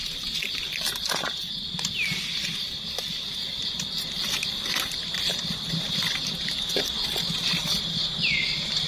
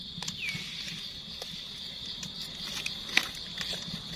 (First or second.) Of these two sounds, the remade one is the first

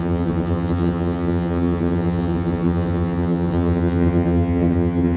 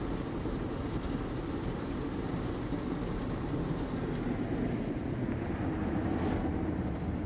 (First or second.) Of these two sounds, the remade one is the first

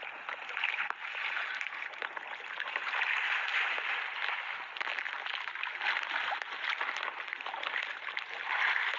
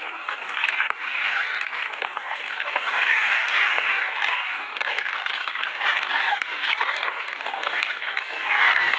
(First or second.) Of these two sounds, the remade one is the second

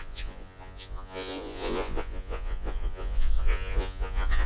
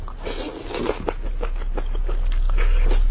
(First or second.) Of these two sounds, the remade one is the first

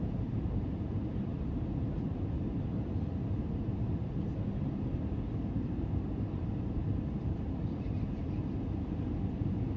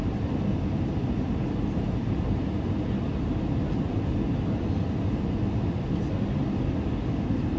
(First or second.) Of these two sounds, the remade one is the first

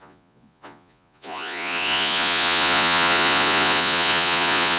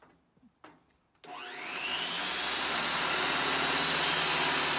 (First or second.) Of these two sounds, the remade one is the first